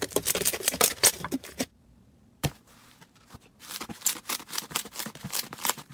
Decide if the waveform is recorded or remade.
remade